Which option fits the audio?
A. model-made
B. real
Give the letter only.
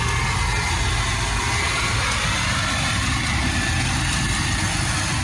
B